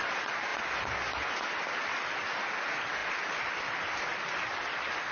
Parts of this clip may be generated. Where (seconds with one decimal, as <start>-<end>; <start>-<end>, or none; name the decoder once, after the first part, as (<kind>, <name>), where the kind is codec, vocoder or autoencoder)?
0.0-0.5 (vocoder, BigVGAN v2); 1.7-5.1